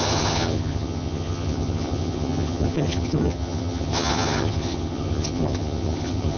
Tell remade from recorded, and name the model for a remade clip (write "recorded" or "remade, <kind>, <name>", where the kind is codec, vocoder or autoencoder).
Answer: remade, vocoder, HiFi-GAN